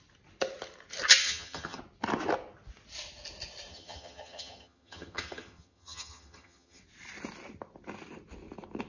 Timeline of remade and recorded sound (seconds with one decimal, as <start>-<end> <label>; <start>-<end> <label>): 0.0-1.2 recorded; 1.2-1.8 remade; 1.8-3.7 recorded; 3.7-6.8 remade; 6.8-8.9 recorded